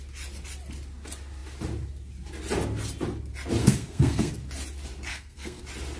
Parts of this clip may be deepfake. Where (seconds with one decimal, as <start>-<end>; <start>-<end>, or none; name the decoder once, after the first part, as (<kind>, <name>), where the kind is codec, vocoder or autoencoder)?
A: 3.6-4.3 (codec, SNAC); 5.1-5.6